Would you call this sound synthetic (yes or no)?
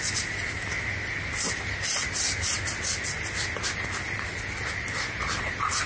no